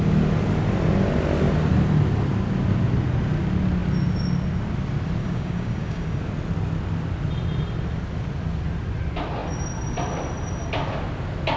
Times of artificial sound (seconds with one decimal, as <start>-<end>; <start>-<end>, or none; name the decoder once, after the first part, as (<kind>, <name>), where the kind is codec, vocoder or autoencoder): 5.2-6.2 (codec, DAC)